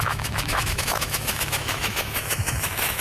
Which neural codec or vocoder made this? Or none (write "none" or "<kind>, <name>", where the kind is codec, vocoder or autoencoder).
autoencoder, DAC-VAE